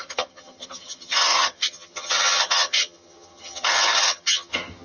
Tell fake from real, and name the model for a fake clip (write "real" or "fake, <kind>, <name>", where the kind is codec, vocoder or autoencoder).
fake, vocoder, HiFi-GAN